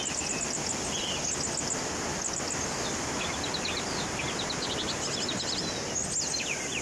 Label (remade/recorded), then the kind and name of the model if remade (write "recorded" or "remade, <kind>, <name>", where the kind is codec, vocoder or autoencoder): recorded